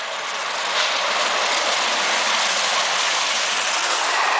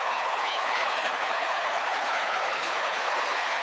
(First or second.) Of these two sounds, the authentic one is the first